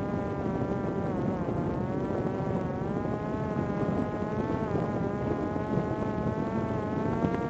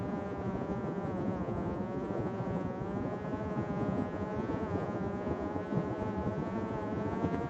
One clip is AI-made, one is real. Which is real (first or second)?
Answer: first